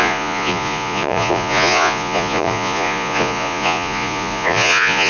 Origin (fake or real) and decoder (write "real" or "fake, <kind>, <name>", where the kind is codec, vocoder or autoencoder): fake, vocoder, Vocos